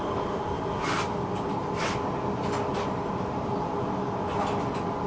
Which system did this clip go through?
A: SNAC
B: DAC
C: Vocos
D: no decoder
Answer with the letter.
D